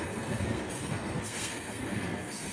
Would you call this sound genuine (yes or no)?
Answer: no